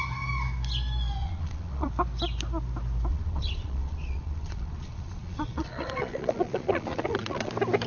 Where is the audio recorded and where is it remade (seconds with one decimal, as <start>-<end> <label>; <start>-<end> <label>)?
0.0-1.2 recorded; 1.2-1.9 remade; 1.9-3.1 recorded; 3.1-7.5 remade; 7.5-7.9 recorded